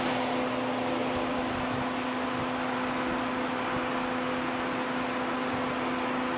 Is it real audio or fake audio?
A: real